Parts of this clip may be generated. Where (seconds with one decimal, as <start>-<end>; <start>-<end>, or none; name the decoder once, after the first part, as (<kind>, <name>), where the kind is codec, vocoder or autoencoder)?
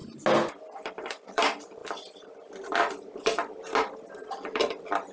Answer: 0.9-1.8 (vocoder, BigVGAN v2); 4.3-5.1